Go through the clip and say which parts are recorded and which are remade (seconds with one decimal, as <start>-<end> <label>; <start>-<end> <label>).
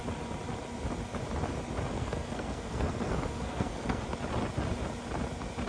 0.0-1.9 recorded; 1.9-4.0 remade; 4.0-5.7 recorded